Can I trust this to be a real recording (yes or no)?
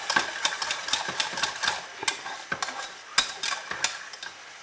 yes